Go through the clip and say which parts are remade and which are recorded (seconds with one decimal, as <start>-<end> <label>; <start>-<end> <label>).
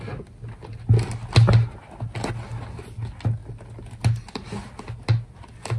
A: 0.0-5.8 recorded